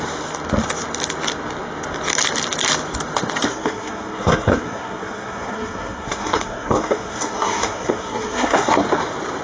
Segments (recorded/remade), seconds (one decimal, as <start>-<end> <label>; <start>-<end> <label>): 0.0-3.5 recorded; 3.5-8.7 remade; 8.7-9.4 recorded